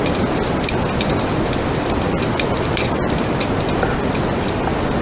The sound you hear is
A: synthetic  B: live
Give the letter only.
B